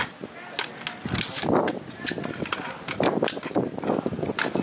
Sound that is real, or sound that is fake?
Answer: real